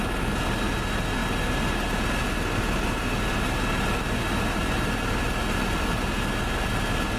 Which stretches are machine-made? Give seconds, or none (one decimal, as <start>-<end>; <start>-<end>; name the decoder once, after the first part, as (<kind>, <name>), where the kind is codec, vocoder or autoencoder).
none

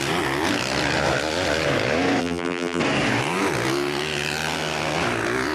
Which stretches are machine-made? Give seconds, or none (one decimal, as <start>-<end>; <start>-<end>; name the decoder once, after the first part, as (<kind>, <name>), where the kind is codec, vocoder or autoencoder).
2.2-2.8 (vocoder, BigVGAN v2)

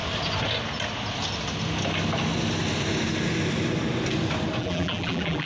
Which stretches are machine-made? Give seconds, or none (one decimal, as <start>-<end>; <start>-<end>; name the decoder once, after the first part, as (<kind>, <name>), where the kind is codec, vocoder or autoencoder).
4.6-5.5 (vocoder, BigVGAN v2)

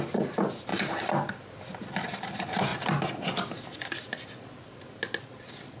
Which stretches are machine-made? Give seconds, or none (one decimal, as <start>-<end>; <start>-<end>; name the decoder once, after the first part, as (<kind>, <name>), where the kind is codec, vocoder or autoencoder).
none

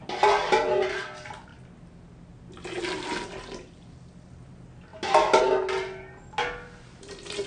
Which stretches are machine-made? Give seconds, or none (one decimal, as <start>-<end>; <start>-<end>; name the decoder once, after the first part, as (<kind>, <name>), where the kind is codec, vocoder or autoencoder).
none